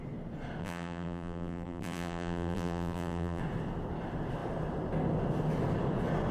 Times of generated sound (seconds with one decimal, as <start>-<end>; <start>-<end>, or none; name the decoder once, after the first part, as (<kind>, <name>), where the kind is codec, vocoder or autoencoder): 0.6-3.4 (vocoder, BigVGAN v2)